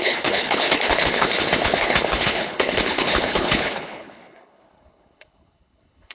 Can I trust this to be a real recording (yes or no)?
no